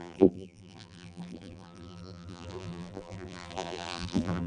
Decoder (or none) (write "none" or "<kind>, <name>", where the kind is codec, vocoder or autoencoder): vocoder, BigVGAN v2